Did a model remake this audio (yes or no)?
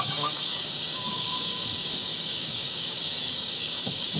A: yes